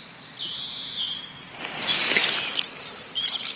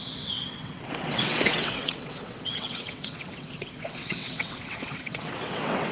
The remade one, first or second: second